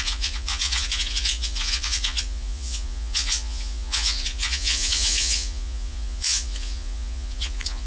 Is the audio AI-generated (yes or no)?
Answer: yes